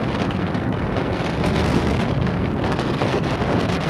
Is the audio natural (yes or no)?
no